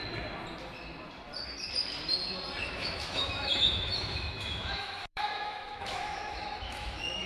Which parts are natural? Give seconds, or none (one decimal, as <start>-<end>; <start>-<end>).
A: 0.0-2.6